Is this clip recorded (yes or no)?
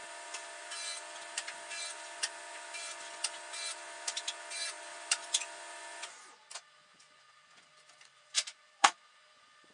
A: no